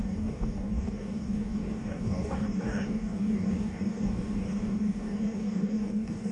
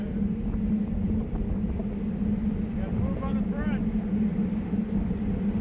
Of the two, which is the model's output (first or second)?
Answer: first